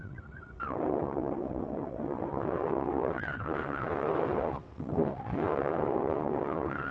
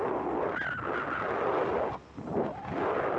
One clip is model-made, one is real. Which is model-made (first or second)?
first